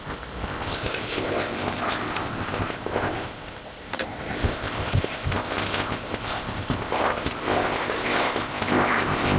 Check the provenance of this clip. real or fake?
fake